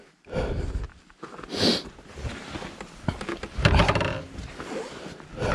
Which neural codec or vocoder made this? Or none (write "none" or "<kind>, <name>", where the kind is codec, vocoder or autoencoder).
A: none